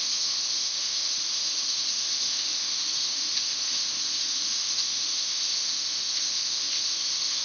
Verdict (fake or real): fake